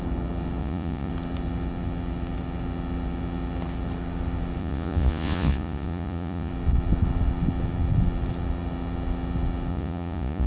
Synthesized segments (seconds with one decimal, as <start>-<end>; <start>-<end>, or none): 0.6-1.1; 4.6-6.5; 9.7-10.5